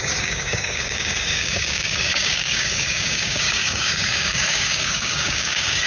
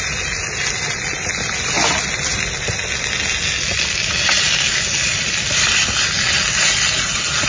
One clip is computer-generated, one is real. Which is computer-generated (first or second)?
first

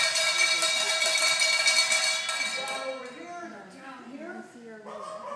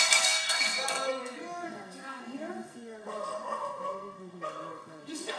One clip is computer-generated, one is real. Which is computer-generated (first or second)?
second